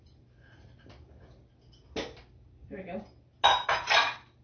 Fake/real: real